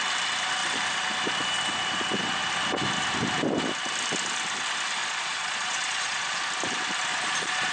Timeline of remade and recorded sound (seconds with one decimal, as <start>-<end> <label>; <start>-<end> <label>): 0.0-5.0 recorded; 5.0-6.4 remade; 6.4-7.1 recorded; 7.1-7.7 remade